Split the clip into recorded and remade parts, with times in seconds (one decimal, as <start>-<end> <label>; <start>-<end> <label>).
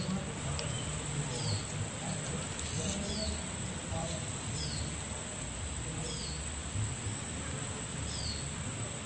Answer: 0.0-4.0 recorded; 4.0-4.6 remade; 4.6-9.1 recorded